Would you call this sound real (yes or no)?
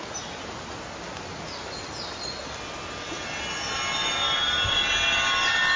yes